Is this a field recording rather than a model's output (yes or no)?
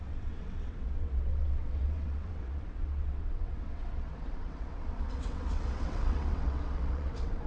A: no